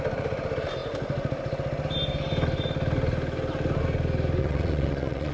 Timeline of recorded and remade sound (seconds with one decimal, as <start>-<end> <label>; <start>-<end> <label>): 0.0-4.4 recorded; 4.4-5.3 remade